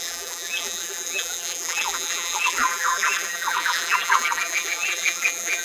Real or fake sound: fake